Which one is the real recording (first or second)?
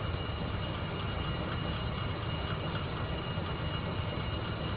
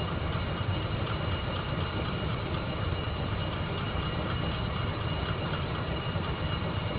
first